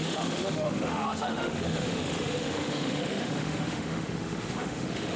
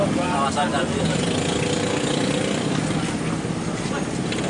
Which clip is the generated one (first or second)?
first